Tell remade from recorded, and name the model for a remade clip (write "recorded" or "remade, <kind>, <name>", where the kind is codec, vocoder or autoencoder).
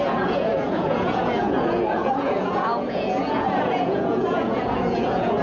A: remade, vocoder, Vocos